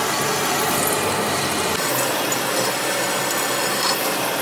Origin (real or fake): real